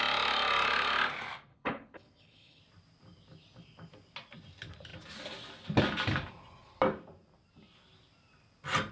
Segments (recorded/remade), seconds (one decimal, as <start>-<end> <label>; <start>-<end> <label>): 0.0-1.5 recorded; 1.5-2.6 remade; 2.6-8.9 recorded